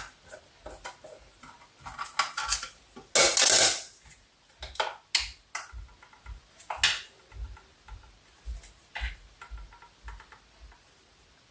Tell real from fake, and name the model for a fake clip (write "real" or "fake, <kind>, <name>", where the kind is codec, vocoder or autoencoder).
real